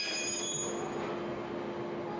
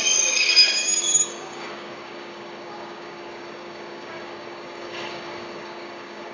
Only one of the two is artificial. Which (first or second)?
second